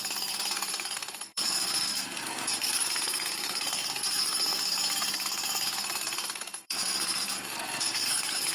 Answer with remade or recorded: remade